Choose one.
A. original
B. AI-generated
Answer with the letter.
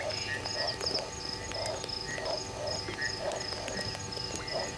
A